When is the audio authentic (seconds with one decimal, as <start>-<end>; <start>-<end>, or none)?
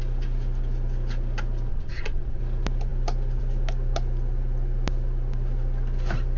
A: 0.0-1.7; 2.4-6.4